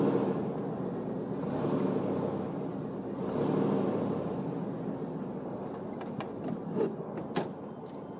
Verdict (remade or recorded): recorded